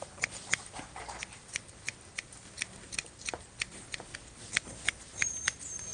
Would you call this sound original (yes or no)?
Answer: yes